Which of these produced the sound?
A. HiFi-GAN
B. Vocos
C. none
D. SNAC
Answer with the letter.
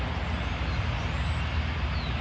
C